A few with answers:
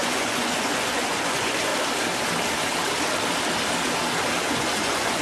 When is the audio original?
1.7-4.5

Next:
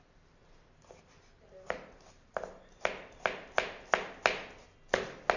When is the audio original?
0.0-5.4

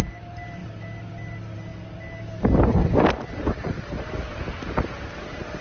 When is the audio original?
0.0-5.6

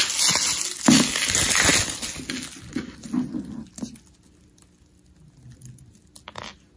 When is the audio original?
0.0-6.8

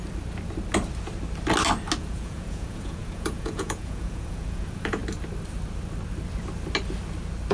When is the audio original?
0.0-2.0; 5.0-7.5

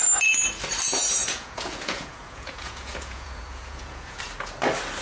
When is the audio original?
0.0-1.2; 4.2-5.0

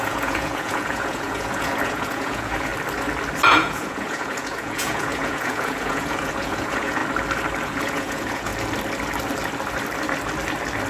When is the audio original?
2.7-3.5; 7.0-7.6; 8.5-10.9

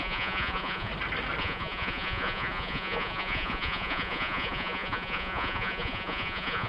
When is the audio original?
0.9-1.4